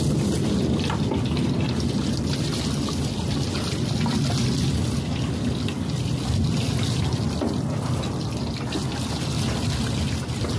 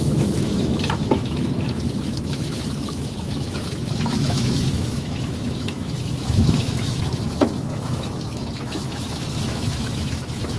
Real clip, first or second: first